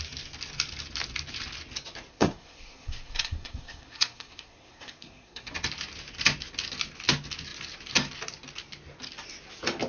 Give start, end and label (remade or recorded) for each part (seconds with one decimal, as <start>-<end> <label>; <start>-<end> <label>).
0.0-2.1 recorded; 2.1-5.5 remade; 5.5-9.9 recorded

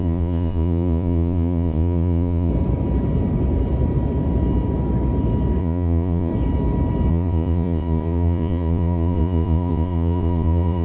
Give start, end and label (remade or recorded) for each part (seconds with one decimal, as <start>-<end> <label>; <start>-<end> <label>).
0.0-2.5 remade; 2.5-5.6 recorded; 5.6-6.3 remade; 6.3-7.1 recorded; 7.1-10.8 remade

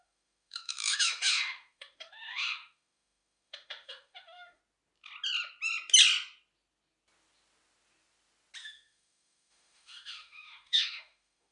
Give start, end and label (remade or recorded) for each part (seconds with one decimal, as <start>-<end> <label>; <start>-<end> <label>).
0.0-4.6 remade; 4.6-8.6 recorded; 8.6-11.5 remade

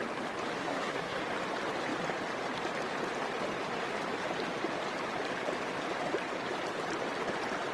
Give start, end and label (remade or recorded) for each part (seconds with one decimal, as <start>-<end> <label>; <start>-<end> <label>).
0.0-0.6 recorded; 0.6-1.2 remade; 1.2-7.7 recorded

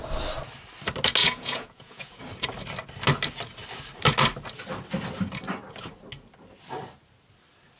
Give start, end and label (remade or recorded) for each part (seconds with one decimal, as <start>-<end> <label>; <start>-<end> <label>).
0.0-1.2 recorded; 1.2-2.2 remade; 2.2-7.8 recorded

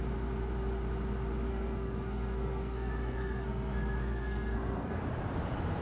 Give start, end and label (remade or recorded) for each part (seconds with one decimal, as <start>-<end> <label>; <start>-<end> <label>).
0.0-1.5 recorded; 1.5-5.0 remade; 5.0-5.8 recorded

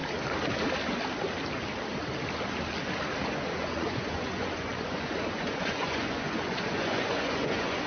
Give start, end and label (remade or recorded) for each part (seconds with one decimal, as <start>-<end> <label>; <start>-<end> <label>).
0.0-3.3 recorded; 3.3-7.9 remade